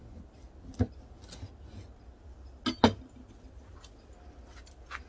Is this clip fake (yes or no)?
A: no